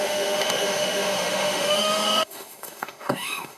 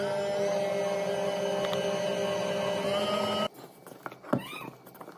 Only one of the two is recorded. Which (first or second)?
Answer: second